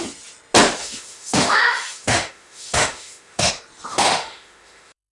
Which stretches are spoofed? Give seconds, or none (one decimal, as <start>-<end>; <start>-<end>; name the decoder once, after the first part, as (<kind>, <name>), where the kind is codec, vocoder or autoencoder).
0.8-3.5 (autoencoder, DAC-VAE); 3.9-5.1